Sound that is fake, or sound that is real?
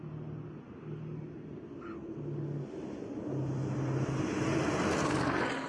real